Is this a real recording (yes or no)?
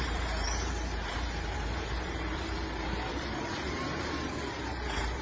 no